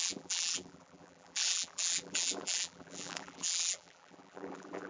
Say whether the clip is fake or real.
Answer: fake